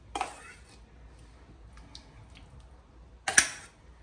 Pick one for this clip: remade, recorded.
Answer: recorded